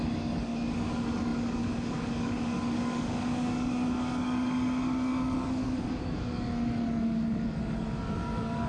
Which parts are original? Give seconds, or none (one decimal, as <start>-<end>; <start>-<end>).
none